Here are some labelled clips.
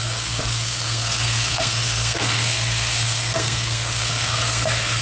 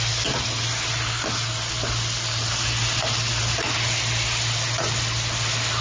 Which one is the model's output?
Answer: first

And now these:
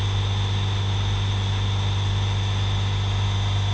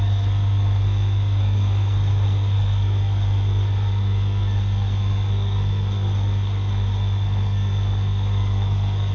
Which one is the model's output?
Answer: second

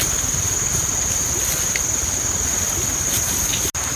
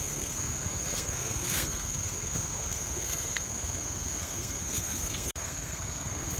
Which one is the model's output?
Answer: second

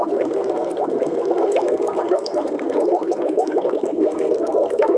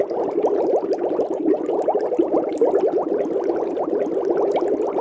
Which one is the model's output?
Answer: first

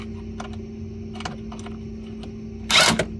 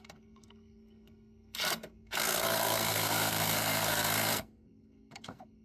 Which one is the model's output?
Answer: second